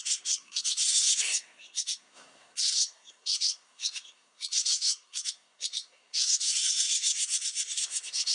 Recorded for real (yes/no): no